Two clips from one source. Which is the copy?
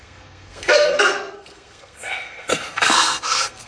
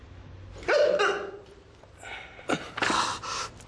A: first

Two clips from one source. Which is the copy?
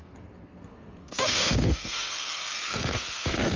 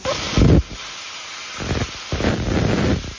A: first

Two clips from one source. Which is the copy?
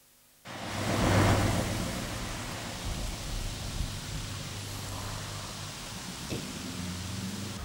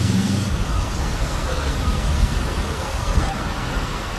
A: second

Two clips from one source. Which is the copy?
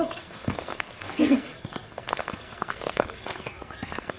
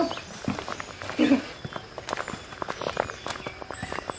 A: first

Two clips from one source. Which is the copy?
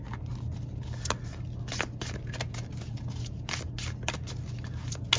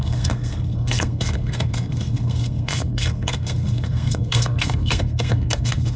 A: second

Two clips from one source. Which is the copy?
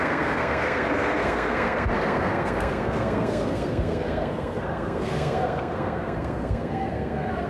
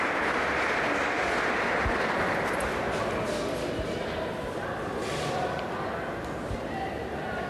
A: first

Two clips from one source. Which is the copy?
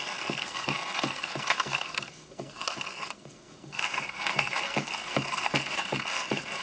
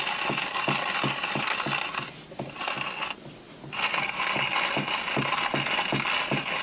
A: first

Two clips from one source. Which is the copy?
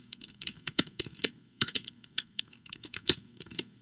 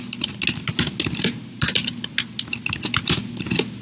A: first